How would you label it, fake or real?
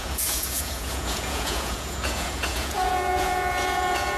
fake